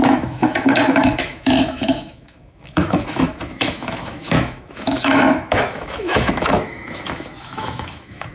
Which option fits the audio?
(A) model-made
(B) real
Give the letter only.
A